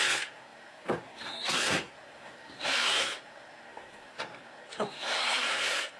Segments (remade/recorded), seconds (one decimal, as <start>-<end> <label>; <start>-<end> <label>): 0.0-6.0 remade